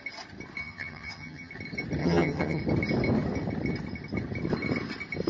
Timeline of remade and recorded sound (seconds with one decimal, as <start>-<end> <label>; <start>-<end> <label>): 0.0-0.6 recorded; 0.6-1.5 remade; 1.5-2.0 recorded; 2.0-2.6 remade; 2.6-5.3 recorded